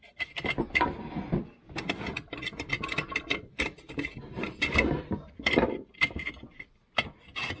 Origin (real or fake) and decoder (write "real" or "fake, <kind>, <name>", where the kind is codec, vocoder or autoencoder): real